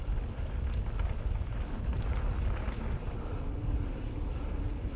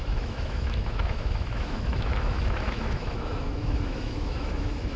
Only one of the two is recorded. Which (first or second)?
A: first